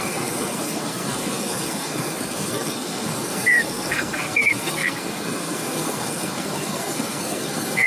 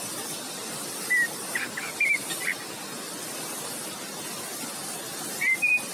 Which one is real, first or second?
second